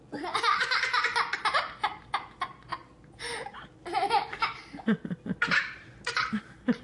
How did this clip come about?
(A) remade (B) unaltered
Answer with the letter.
B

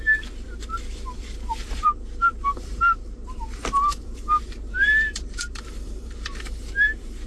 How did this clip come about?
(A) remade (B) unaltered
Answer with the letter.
A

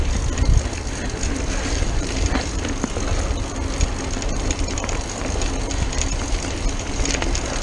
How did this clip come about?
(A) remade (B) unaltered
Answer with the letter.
B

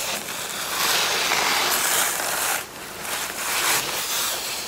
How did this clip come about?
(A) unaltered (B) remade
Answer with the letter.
A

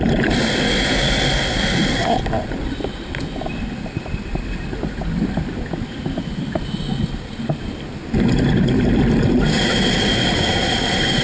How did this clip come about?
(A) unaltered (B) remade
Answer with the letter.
A